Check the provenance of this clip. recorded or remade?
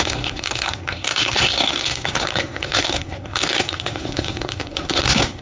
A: remade